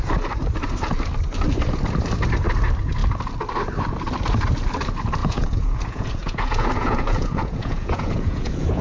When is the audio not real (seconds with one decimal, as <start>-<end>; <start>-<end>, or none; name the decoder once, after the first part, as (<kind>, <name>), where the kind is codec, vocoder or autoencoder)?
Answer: 5.2-8.8 (vocoder, Vocos)